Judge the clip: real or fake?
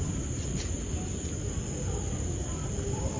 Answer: real